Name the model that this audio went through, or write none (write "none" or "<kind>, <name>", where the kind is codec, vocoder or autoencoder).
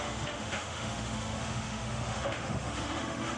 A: autoencoder, DAC-VAE